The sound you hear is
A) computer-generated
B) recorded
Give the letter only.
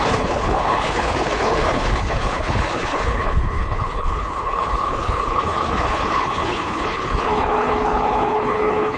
A